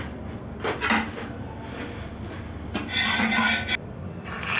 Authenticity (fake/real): real